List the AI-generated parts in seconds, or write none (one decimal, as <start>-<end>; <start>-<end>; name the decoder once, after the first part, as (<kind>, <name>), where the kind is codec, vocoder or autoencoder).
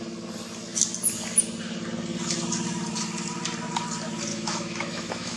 4.3-5.4 (autoencoder, DAC-VAE)